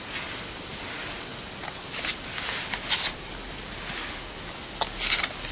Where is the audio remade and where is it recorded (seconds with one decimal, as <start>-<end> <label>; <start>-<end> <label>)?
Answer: 0.0-5.5 recorded